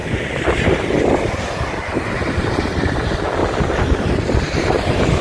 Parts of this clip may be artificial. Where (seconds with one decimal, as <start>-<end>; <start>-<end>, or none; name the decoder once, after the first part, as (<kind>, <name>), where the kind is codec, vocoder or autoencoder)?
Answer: none